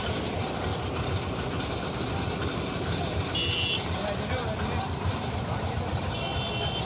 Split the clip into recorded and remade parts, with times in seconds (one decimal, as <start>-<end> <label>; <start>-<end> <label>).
0.0-6.8 recorded